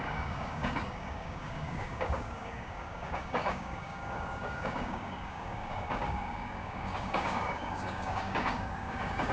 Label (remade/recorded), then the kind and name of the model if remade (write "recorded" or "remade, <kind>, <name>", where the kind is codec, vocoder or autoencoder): remade, codec, DAC